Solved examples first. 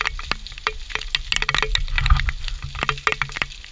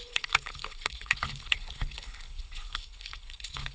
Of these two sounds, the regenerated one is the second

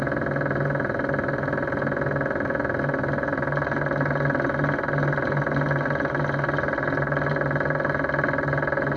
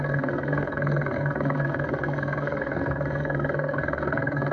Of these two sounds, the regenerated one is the second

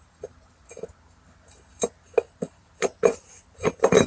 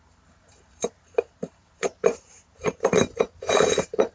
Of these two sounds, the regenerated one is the second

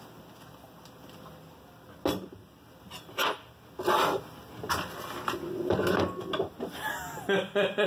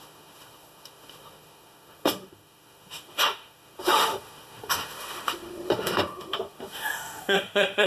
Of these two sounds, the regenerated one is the second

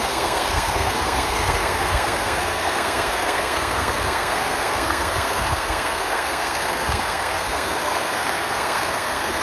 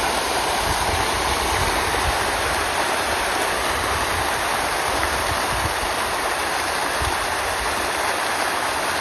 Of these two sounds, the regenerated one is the first